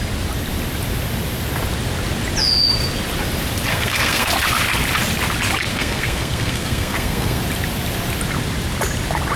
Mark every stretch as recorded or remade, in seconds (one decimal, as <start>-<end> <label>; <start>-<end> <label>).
0.0-3.7 recorded; 3.7-4.3 remade; 4.3-5.7 recorded; 5.7-7.4 remade; 7.4-9.4 recorded